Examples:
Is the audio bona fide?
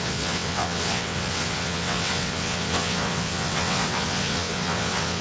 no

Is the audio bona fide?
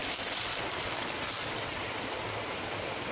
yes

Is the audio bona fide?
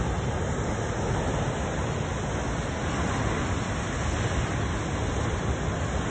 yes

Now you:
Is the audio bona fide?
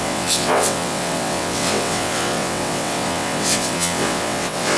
no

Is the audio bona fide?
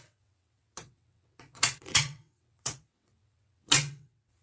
no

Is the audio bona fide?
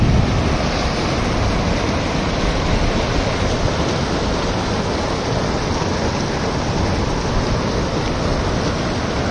yes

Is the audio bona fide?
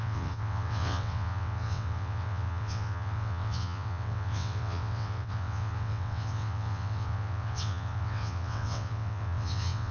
no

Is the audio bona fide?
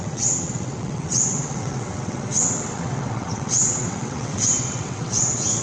no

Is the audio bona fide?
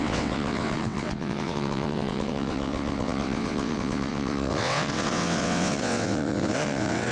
no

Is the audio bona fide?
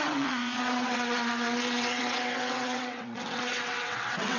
no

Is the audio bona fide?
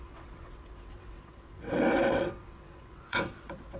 no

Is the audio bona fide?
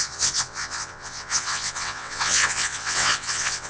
no